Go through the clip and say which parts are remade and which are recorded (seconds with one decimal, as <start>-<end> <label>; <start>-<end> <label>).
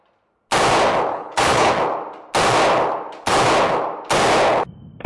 0.0-1.1 recorded; 1.1-1.7 remade; 1.7-5.1 recorded